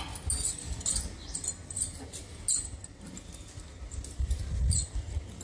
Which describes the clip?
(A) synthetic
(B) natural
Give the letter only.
B